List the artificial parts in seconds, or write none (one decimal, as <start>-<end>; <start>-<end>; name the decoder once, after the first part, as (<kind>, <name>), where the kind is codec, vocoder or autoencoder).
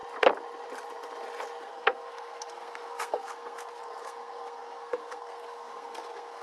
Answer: 1.6-6.4 (codec, SNAC)